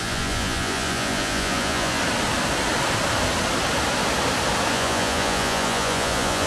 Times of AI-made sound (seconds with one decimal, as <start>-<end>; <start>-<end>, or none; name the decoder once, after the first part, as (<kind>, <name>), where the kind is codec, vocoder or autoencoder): 0.0-2.0 (vocoder, Vocos); 4.7-6.5